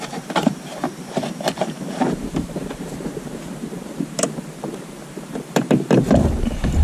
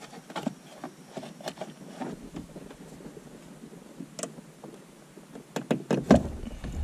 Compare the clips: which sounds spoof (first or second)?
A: first